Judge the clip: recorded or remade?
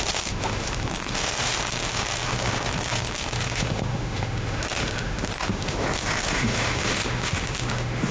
remade